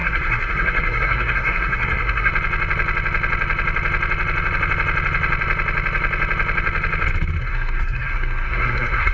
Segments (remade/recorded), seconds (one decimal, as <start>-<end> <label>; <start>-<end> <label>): 0.0-2.3 remade; 2.3-7.4 recorded; 7.4-9.1 remade